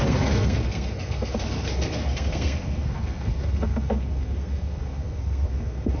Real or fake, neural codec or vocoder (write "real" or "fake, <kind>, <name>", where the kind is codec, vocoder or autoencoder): fake, codec, SNAC